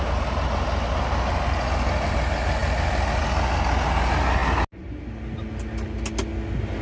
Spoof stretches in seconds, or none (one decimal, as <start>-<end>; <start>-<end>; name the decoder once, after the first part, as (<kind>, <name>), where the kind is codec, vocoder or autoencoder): none